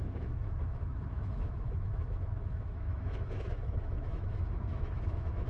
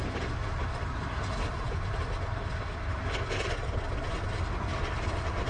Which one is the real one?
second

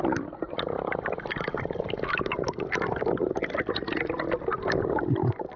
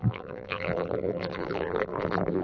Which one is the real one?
first